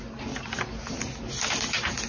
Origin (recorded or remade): recorded